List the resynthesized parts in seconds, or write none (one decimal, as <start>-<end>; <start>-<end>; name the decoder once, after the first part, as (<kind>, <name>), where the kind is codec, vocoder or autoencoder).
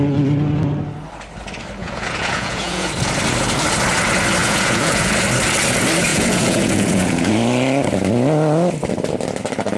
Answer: 1.8-2.9 (vocoder, Vocos); 4.4-5.1; 6.1-7.3